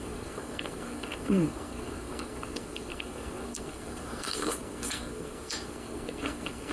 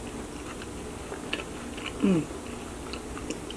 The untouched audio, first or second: second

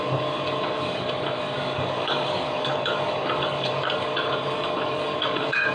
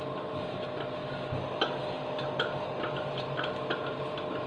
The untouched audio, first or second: second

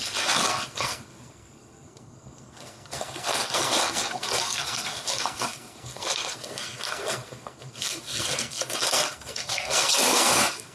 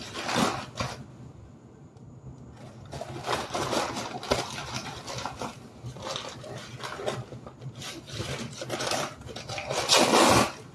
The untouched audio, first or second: second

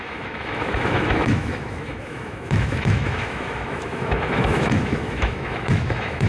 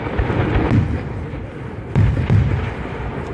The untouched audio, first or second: second